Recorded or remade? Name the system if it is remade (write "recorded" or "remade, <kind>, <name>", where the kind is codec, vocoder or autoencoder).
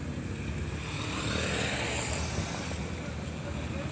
recorded